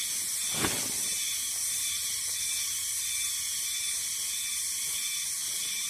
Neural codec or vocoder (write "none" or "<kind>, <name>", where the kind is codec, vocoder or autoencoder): none